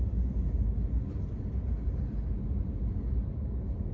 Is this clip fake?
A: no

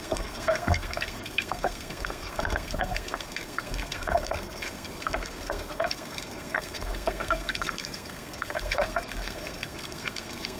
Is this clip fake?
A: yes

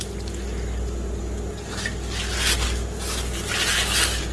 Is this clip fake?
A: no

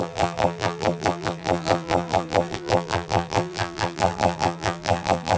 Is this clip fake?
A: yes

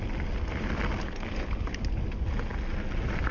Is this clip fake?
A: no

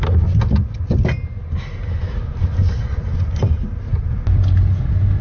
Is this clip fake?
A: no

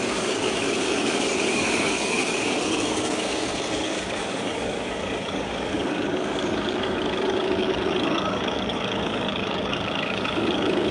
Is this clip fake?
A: yes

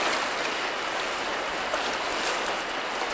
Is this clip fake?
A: no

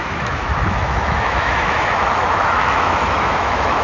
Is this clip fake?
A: yes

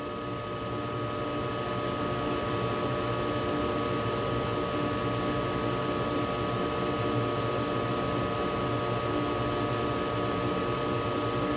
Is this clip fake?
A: no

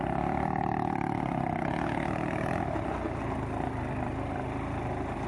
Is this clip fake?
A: yes